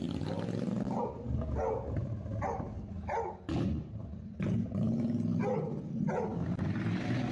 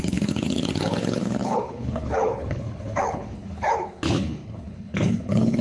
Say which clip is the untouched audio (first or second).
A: first